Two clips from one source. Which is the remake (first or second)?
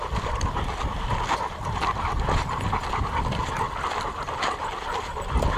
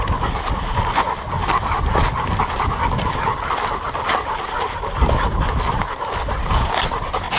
first